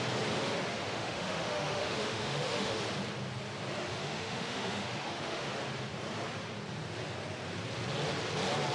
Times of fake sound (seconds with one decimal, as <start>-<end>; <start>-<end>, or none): 0.7-2.8; 3.9-5.5